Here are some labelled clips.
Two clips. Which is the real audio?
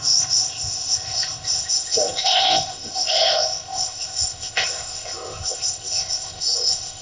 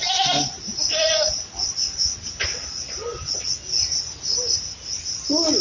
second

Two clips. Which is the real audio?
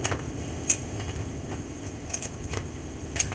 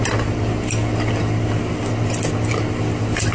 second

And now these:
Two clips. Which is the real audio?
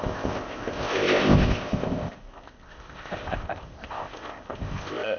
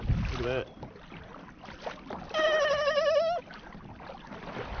second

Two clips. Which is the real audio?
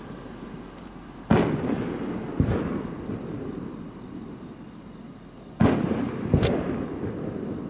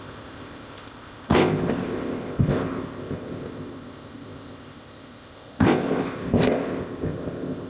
first